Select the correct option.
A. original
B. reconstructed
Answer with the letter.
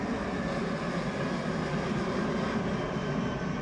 A